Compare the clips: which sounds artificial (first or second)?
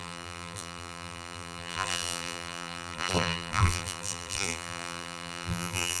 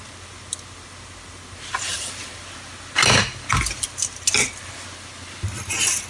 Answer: first